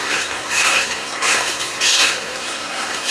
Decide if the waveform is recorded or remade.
remade